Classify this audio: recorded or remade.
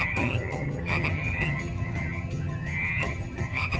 remade